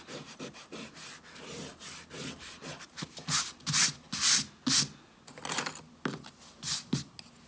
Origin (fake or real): real